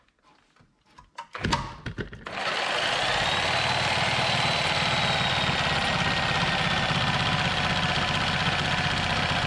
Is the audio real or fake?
real